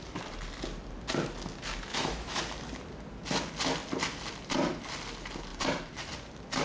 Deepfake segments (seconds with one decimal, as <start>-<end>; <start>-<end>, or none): 1.9-2.4